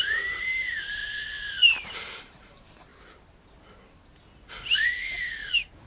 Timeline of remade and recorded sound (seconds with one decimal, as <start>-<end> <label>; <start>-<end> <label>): 0.0-1.0 remade; 1.0-2.2 recorded; 2.2-2.9 remade; 2.9-5.9 recorded